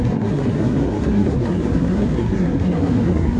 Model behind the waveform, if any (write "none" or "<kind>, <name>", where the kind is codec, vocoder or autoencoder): codec, SNAC